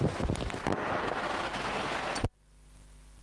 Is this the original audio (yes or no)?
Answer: yes